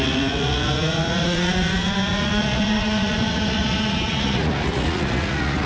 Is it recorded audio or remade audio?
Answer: remade